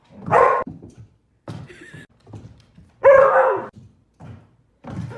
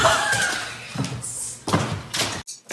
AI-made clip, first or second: first